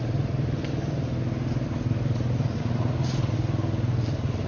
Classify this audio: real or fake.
real